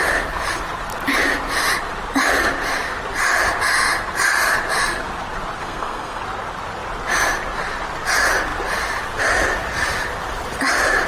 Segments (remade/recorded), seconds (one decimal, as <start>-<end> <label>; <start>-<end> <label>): 0.0-5.6 recorded; 5.6-6.2 remade; 6.2-11.1 recorded

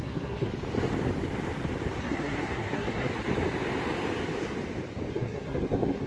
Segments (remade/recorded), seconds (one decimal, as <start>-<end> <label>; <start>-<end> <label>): 0.0-0.5 remade; 0.5-2.0 recorded; 2.0-3.1 remade; 3.1-5.1 recorded; 5.1-6.1 remade